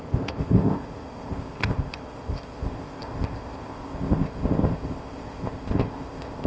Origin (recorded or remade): remade